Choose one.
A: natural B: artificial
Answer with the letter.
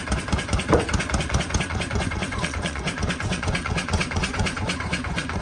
B